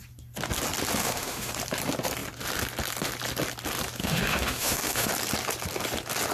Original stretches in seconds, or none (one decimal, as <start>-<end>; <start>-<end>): 0.0-1.0; 1.5-4.0; 5.1-6.3